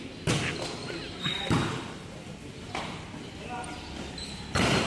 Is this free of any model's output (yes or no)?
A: yes